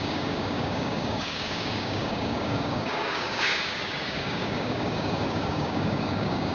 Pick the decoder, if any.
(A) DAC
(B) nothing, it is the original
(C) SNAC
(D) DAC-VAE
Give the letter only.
A